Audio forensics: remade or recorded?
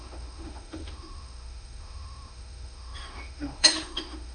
remade